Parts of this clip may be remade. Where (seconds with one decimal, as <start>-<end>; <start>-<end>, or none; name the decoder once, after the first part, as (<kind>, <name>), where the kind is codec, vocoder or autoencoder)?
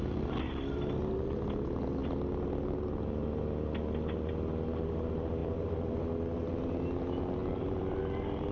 5.4-6.0 (vocoder, BigVGAN v2); 7.4-8.0